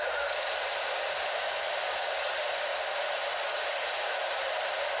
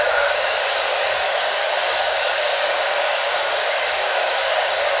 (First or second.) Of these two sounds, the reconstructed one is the second